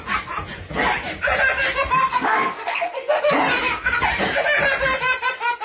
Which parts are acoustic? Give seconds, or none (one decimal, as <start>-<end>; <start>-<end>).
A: 0.0-2.1; 3.2-5.6